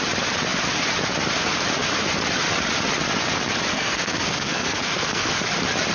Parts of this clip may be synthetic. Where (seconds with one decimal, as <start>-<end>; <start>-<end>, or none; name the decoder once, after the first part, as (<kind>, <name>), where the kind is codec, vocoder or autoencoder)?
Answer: 3.7-5.3 (codec, SNAC)